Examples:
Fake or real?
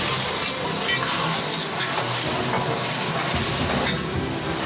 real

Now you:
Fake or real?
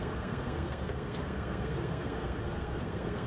fake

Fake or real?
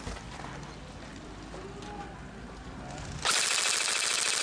real